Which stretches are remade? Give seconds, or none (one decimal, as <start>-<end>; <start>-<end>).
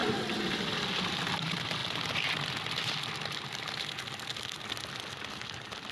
none